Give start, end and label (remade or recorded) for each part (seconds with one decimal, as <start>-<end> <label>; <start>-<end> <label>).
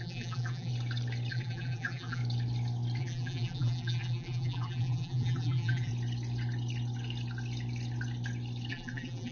0.0-0.7 remade; 0.7-1.3 recorded; 1.3-2.2 remade; 2.2-3.0 recorded; 3.0-5.9 remade; 5.9-8.7 recorded; 8.7-9.3 remade